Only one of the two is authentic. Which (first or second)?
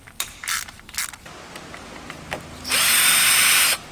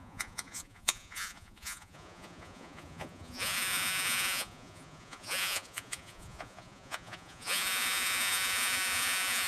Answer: first